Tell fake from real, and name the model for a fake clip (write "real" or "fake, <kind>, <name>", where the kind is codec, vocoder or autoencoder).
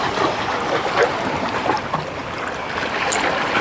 real